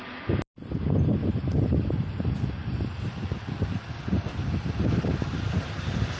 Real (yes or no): yes